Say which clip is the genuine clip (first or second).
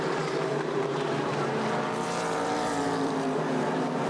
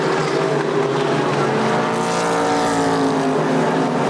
second